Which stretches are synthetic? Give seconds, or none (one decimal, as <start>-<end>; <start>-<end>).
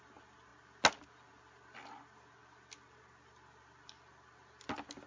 none